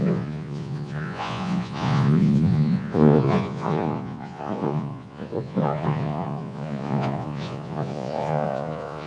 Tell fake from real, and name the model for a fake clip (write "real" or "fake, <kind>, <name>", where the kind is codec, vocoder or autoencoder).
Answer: fake, vocoder, Vocos